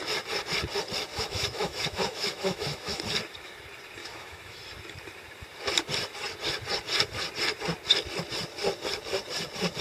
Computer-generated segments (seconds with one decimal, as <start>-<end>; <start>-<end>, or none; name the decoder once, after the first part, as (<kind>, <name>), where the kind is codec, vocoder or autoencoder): 1.1-3.0 (autoencoder, DAC-VAE); 4.0-4.6